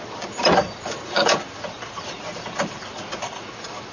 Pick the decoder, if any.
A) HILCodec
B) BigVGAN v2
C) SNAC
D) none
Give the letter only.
B